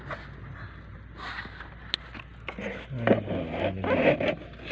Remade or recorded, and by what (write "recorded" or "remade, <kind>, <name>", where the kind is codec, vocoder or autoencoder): recorded